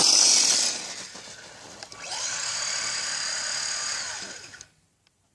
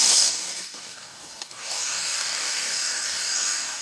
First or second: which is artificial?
second